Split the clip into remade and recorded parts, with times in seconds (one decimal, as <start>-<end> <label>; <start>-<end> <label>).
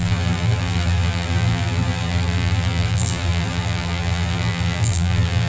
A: 0.0-5.5 remade